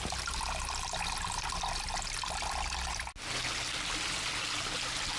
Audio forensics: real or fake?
real